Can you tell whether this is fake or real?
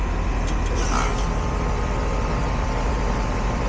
real